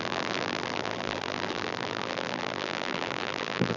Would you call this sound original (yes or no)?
no